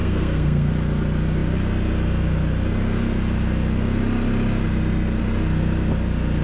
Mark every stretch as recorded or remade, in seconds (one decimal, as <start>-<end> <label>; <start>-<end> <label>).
0.0-0.7 remade; 0.7-6.4 recorded